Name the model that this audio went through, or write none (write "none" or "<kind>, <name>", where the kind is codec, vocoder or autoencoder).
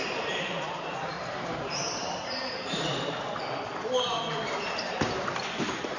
vocoder, BigVGAN v2